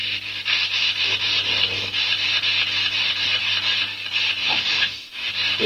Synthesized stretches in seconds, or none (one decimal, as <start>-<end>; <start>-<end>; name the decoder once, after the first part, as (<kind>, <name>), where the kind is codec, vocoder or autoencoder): 4.4-5.3 (autoencoder, DAC-VAE)